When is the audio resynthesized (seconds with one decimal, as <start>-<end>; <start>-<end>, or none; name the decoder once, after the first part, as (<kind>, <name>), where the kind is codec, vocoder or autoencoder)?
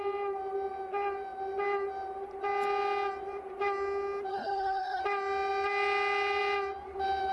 4.3-5.0 (codec, SNAC)